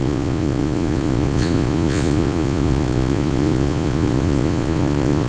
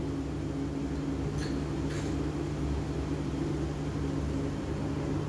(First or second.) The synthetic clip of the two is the first